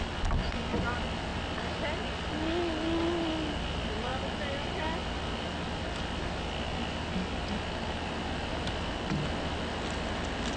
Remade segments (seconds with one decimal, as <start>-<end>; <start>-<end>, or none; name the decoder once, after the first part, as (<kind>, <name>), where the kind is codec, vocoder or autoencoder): none